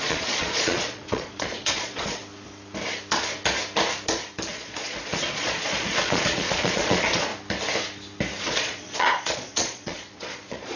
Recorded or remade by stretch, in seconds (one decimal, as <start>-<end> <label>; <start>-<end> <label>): 0.0-2.2 remade; 2.2-4.5 recorded; 4.5-7.3 remade; 7.3-8.4 recorded; 8.4-10.8 remade